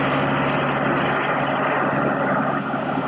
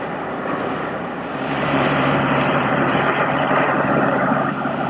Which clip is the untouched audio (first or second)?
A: first